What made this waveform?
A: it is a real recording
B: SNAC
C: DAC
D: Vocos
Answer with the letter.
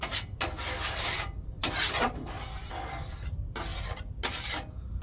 A